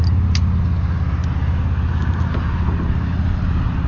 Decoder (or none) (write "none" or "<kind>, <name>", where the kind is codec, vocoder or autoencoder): none